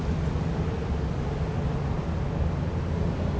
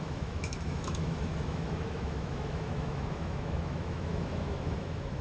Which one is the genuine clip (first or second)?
first